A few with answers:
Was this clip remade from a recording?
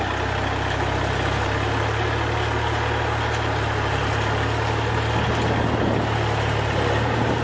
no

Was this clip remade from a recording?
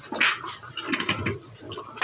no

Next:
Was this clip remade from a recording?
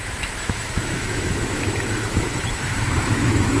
yes